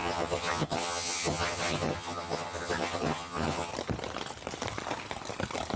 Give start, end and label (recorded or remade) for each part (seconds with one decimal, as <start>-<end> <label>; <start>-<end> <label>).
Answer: 0.0-3.7 remade; 3.7-5.8 recorded